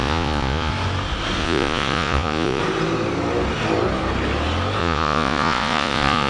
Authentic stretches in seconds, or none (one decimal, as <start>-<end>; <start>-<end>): 0.7-1.4; 2.6-4.8